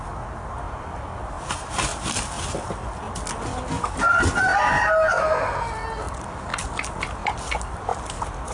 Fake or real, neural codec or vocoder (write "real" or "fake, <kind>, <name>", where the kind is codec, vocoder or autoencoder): real